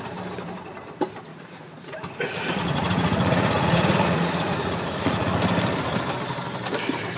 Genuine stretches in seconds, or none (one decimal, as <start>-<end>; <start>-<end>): 0.0-1.3; 5.4-7.2